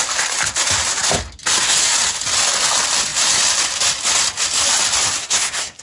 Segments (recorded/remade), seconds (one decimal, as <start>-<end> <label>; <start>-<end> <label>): 0.0-5.2 recorded; 5.2-5.8 remade